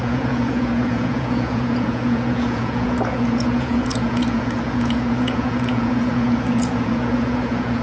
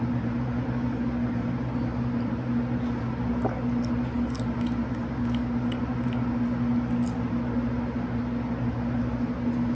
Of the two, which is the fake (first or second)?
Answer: first